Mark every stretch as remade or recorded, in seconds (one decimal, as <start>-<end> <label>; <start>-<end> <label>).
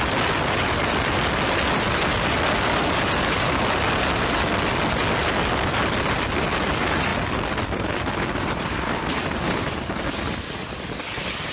0.0-11.5 recorded